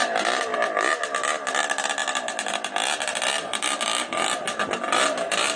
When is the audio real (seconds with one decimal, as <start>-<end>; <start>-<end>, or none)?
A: 0.0-5.6